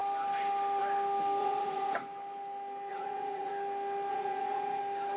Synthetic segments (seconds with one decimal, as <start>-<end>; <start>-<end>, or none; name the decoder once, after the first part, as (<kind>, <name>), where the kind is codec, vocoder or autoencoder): 1.4-2.0 (vocoder, Vocos); 2.9-3.5; 4.1-4.8